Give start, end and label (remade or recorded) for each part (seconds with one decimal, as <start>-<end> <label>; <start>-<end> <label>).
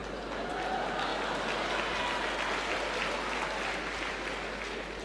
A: 0.0-5.0 recorded